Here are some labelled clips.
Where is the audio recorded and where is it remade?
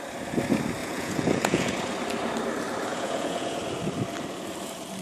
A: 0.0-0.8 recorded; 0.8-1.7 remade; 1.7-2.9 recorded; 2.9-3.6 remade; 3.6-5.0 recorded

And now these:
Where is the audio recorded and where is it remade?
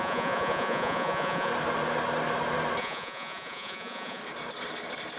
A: 0.0-1.5 remade; 1.5-2.8 recorded; 2.8-4.2 remade; 4.2-5.2 recorded